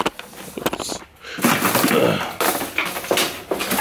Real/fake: real